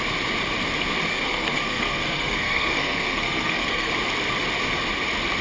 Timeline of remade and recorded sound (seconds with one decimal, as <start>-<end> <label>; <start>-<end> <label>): 0.0-1.1 recorded; 1.1-3.9 remade; 3.9-5.4 recorded